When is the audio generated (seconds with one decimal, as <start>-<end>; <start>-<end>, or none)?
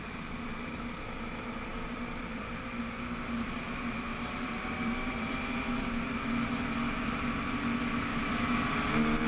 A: 1.7-5.7; 8.1-8.7